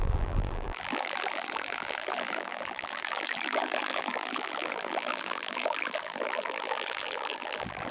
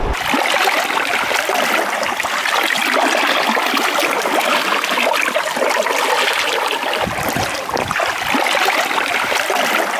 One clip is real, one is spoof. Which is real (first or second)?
second